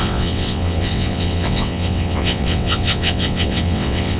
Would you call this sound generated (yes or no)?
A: yes